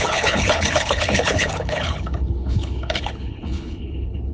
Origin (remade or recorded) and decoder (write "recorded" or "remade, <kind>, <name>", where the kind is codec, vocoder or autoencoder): remade, codec, HILCodec